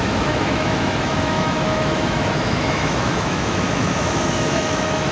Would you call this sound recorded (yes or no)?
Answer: no